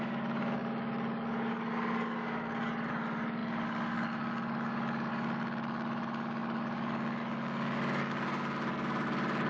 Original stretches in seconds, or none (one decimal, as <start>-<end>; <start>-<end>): none